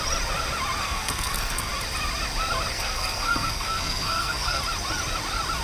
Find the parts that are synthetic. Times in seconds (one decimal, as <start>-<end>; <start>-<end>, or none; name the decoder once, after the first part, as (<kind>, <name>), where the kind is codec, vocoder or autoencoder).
0.8-1.7 (codec, SNAC); 2.7-4.6